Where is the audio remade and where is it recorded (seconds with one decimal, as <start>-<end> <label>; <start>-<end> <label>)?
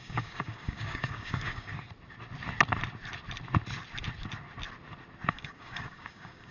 0.0-1.7 remade; 1.7-5.3 recorded; 5.3-6.5 remade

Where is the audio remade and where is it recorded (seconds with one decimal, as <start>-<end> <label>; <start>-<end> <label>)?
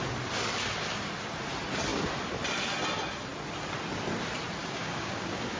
0.0-4.6 recorded; 4.6-5.6 remade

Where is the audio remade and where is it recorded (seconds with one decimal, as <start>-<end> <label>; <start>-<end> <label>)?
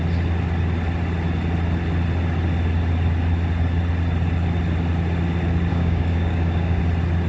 0.0-5.7 recorded; 5.7-6.8 remade; 6.8-7.3 recorded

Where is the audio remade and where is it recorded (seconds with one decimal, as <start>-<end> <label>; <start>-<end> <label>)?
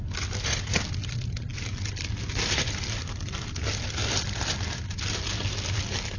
0.0-6.2 recorded